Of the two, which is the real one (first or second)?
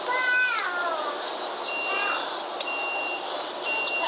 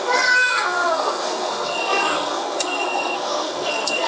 first